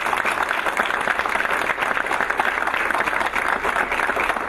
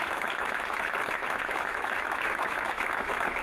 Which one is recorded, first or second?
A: first